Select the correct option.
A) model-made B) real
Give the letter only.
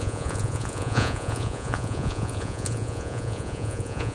A